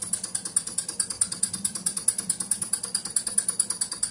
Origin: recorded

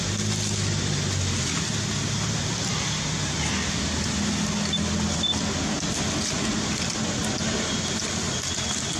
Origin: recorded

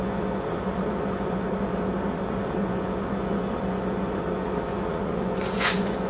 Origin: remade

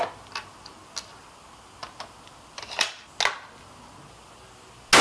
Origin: recorded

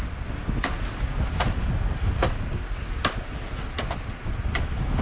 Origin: recorded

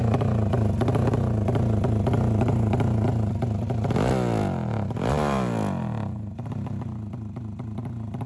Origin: recorded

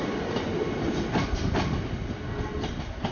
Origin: recorded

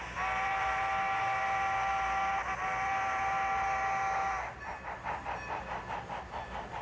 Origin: recorded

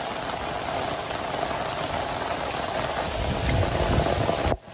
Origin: recorded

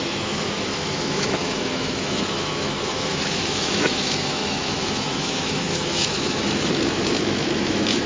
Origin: remade